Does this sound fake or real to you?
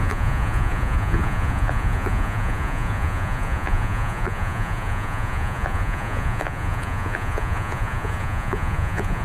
fake